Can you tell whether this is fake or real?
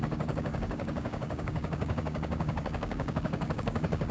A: fake